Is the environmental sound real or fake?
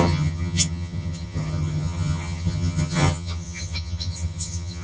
fake